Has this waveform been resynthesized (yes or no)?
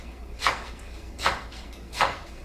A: yes